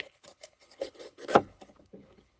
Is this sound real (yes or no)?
no